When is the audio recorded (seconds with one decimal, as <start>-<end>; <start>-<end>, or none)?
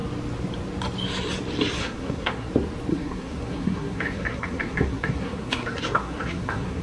0.0-1.8; 2.5-2.9